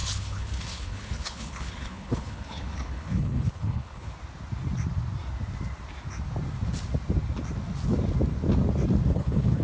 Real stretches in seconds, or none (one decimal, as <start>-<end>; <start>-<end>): 4.1-9.1